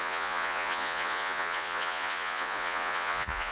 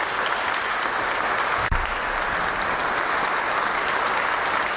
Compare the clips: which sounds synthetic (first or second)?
first